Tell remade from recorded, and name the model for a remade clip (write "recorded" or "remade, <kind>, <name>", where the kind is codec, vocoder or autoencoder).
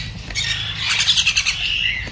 recorded